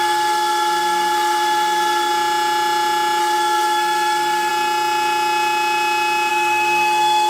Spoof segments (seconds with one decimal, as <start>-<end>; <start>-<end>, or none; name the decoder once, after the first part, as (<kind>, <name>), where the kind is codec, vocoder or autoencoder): 0.0-2.1 (codec, SNAC); 3.2-4.5; 6.3-7.3